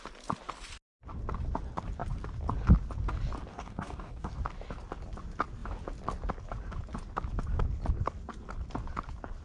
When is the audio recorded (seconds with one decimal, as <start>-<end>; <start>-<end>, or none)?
0.0-3.5; 4.4-9.4